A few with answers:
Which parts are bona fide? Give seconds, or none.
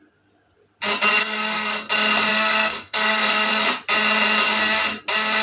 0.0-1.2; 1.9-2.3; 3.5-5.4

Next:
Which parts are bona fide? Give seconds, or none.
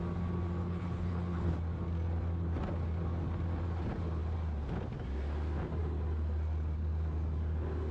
0.0-0.6; 1.5-7.9